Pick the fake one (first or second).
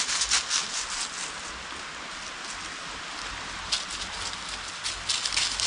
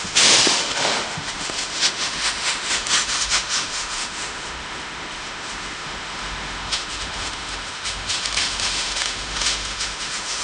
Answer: second